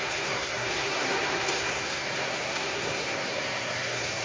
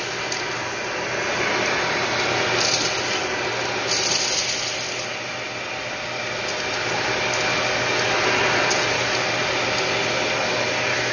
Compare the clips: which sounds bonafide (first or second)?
second